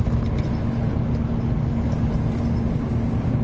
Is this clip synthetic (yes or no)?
no